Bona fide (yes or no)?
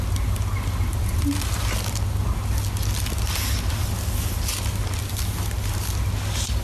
yes